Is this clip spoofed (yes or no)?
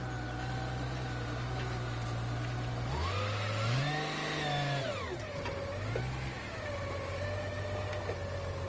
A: no